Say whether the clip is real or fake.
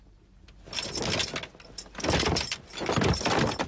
real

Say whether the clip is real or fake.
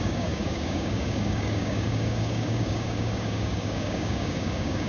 fake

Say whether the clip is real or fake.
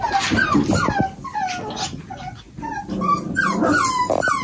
real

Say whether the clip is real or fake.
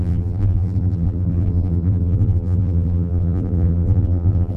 fake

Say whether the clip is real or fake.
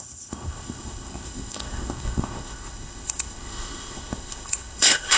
fake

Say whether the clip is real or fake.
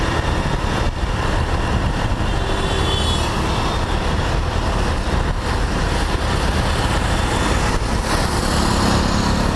real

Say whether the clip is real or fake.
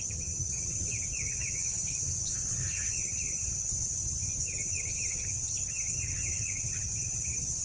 fake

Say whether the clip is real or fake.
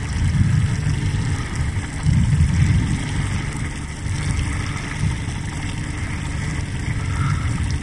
real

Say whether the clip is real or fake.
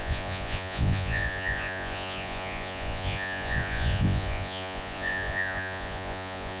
fake